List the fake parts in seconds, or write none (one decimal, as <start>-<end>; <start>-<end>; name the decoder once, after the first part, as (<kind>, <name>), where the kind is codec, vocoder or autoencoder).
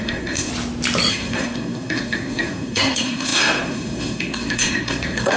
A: 0.0-0.5 (codec, SNAC); 1.1-5.4